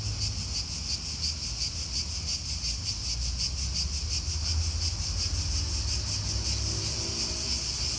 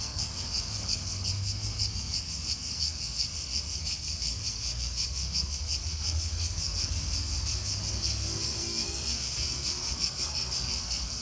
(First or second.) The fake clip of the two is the second